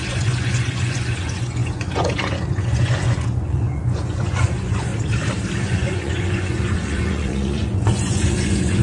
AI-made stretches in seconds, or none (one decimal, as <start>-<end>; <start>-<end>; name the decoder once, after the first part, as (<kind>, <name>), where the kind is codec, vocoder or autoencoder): 0.0-4.9 (vocoder, Vocos); 5.6-8.8